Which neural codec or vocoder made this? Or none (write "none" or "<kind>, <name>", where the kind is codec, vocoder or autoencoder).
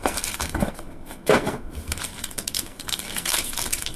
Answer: codec, SNAC